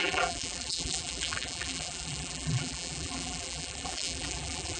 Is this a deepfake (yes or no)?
yes